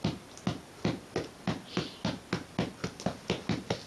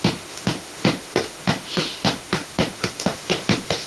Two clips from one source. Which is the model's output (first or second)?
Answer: second